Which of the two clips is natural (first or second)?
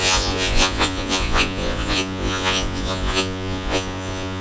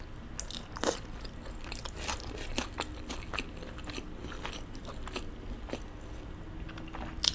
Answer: second